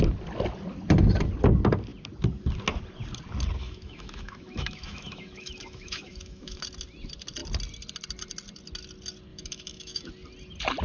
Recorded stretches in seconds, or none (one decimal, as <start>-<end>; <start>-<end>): 0.0-3.6; 6.6-9.3; 10.1-10.8